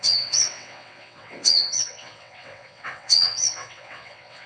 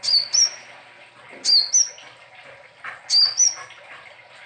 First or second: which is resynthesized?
first